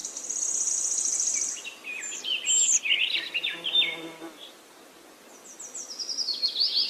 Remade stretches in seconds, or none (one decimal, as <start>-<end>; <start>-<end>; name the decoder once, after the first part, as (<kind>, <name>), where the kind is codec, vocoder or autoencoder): none